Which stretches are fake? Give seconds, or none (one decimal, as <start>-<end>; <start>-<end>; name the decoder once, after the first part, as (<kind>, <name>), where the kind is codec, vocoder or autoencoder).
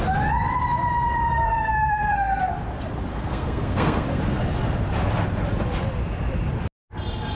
1.5-2.5 (codec, SNAC); 3.1-4.2